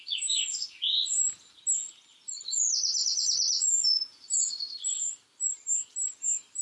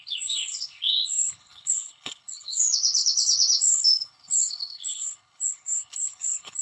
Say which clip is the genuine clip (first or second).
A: first